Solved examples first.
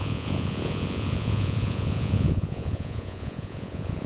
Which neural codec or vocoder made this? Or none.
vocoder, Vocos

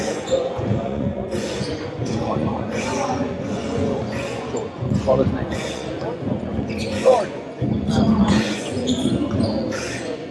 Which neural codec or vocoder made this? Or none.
vocoder, Vocos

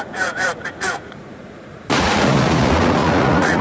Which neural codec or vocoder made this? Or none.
vocoder, Vocos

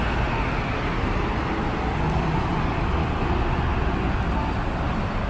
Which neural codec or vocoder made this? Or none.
none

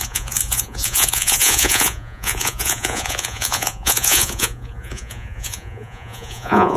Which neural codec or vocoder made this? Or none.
vocoder, Vocos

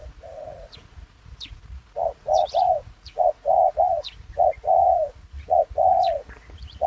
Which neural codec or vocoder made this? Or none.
vocoder, Vocos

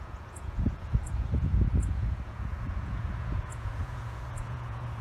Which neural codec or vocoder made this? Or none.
vocoder, Vocos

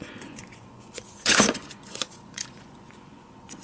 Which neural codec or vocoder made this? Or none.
vocoder, Vocos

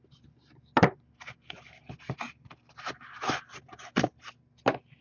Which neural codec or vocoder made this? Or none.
none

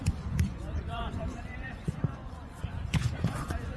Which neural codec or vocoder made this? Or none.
vocoder, Vocos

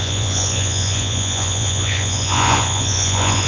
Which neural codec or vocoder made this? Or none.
vocoder, Vocos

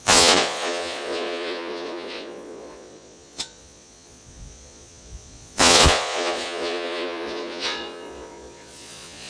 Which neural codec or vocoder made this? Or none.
vocoder, Vocos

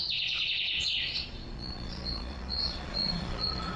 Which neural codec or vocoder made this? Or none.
vocoder, Vocos